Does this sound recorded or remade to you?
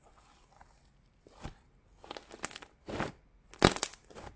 recorded